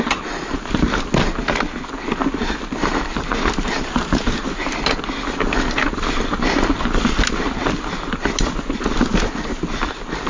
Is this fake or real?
real